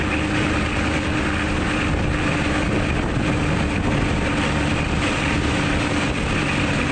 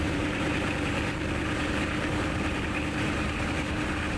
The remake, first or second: second